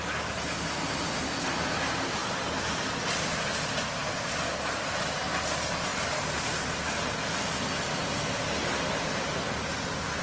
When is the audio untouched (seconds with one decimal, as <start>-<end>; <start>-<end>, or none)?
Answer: 0.0-10.2